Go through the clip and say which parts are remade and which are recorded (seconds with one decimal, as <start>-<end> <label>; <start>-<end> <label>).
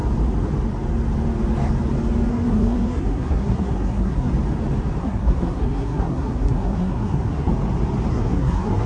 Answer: 0.0-2.3 recorded; 2.3-4.3 remade; 4.3-5.0 recorded; 5.0-7.5 remade; 7.5-8.1 recorded; 8.1-8.9 remade